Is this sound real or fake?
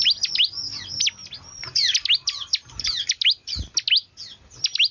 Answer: real